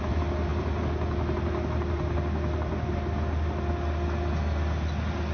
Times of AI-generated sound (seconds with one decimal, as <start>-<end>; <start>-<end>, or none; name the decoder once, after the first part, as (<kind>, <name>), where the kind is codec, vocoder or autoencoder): none